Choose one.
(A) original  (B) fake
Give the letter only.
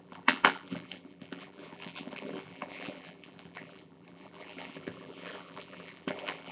B